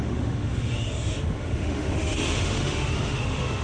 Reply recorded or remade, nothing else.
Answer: remade